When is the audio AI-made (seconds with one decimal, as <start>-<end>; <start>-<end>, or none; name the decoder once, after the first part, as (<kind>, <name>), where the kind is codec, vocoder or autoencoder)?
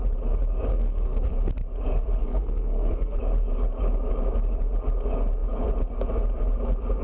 0.7-1.3 (codec, SNAC); 2.2-3.2